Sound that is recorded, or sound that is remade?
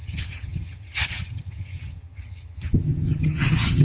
remade